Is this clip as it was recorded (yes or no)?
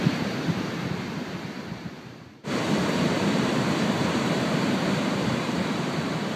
no